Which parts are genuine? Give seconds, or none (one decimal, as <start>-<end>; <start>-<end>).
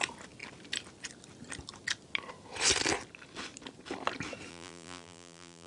0.0-4.5